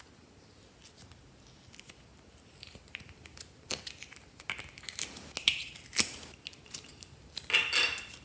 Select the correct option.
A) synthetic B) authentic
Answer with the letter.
B